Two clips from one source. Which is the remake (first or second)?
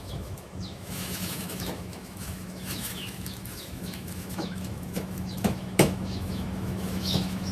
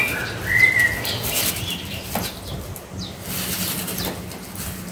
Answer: first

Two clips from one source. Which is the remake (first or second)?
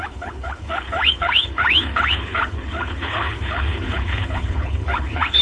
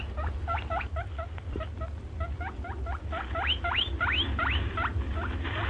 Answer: first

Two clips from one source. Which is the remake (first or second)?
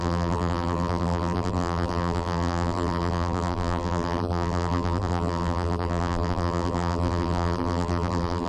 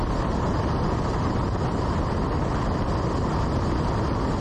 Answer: first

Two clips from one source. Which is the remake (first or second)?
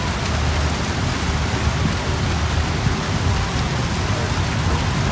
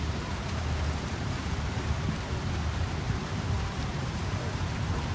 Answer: second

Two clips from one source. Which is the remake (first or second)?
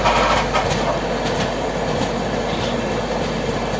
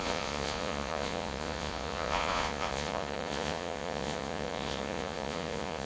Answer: second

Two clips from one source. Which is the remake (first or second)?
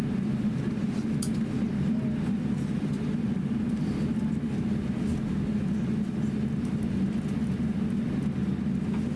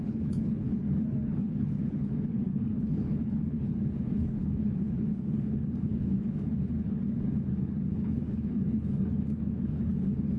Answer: second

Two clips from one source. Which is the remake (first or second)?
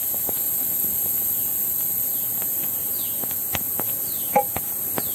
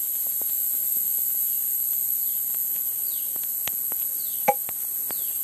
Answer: first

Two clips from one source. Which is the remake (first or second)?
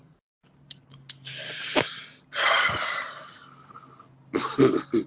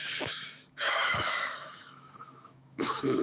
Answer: second